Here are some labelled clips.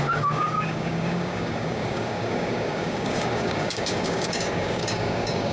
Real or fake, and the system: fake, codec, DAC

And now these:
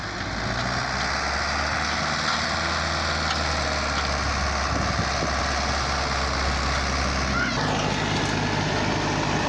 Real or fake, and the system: real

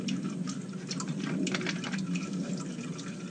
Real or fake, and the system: real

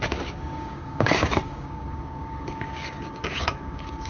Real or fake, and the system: fake, codec, DAC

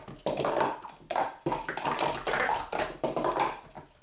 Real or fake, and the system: real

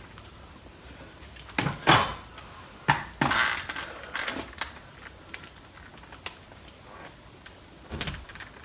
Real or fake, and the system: real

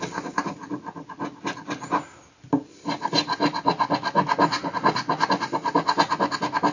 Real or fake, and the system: real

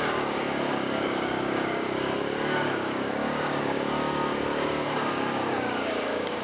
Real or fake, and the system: fake, codec, DAC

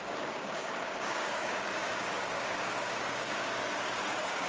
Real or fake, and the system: fake, codec, DAC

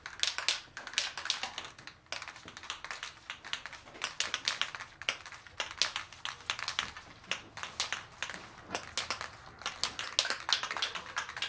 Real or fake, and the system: real